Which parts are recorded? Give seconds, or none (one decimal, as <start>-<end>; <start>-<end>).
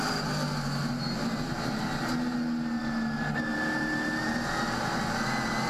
0.0-0.8; 1.9-3.5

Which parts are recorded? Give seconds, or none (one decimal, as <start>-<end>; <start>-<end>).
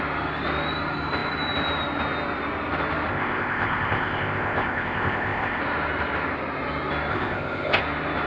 0.0-3.1; 5.6-7.1; 7.8-8.3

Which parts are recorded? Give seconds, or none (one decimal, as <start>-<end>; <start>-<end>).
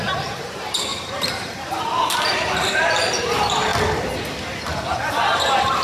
3.7-5.3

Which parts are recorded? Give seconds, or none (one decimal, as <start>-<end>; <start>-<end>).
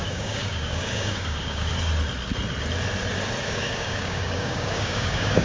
1.7-3.4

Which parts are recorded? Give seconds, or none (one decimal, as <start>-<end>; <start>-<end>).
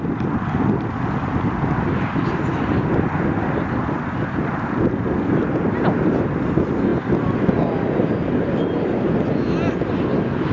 0.0-10.5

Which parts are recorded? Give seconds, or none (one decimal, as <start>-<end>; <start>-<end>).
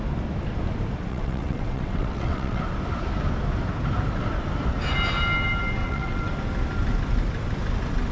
0.0-1.1; 2.6-5.8; 6.3-8.1